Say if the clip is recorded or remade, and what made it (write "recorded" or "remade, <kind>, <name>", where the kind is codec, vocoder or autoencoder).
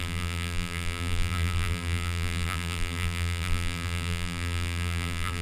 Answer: remade, vocoder, BigVGAN v2